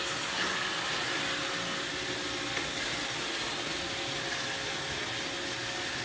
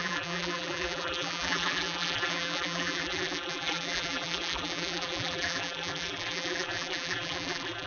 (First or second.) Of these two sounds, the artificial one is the second